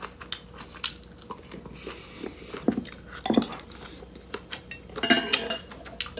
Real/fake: real